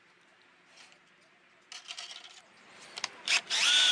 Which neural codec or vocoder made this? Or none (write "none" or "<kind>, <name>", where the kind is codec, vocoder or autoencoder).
none